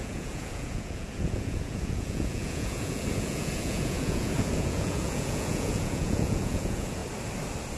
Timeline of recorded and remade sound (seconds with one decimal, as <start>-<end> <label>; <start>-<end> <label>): 0.0-7.0 remade; 7.0-7.8 recorded